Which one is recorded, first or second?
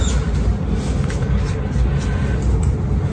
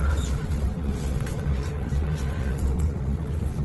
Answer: first